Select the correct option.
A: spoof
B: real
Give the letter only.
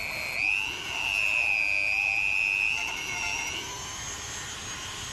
B